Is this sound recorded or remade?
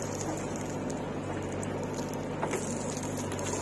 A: recorded